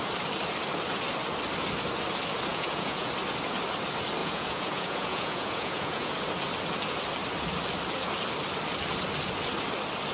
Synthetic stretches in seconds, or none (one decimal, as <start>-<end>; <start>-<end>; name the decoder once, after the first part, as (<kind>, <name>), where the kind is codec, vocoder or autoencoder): 2.5-3.1 (vocoder, Vocos); 4.2-6.1